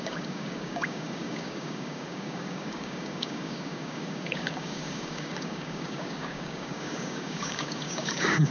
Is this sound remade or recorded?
remade